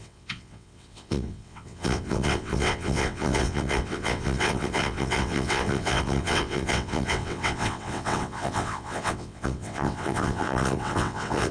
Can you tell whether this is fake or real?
fake